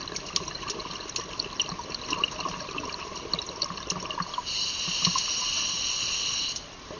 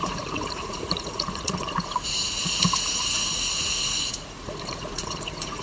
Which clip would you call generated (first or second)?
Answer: second